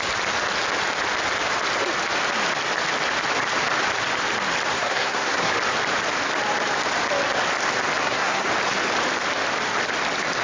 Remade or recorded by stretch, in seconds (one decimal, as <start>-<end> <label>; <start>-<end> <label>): 0.0-4.7 recorded; 4.7-5.5 remade; 5.5-8.0 recorded; 8.0-8.5 remade; 8.5-10.4 recorded

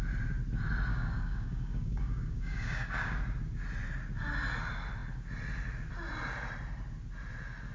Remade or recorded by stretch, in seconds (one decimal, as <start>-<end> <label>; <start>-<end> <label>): 0.0-0.9 recorded; 0.9-3.2 remade; 3.2-7.7 recorded

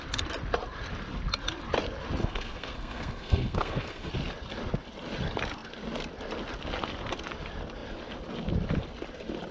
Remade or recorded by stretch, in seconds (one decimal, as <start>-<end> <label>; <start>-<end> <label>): 0.0-2.2 recorded; 2.2-4.1 remade; 4.1-9.5 recorded

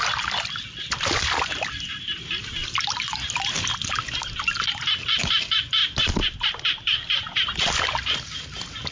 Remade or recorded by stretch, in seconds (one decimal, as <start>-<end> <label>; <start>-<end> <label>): 0.0-5.8 recorded; 5.8-7.8 remade; 7.8-8.9 recorded

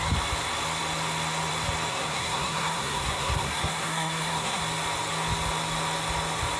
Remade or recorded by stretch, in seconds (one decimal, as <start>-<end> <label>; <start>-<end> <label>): 0.0-1.9 recorded; 1.9-4.6 remade; 4.6-6.6 recorded

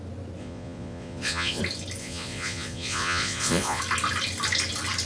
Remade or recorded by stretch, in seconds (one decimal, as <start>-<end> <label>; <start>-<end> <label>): 0.0-0.4 recorded; 0.4-1.6 remade; 1.6-2.0 recorded; 2.0-3.8 remade; 3.8-5.1 recorded